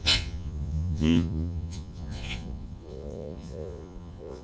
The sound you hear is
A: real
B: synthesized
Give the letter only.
B